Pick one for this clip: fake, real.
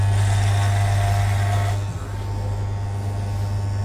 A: real